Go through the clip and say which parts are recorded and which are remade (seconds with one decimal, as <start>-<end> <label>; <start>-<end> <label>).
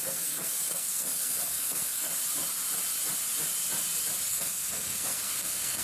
0.0-2.1 remade; 2.1-4.3 recorded; 4.3-5.8 remade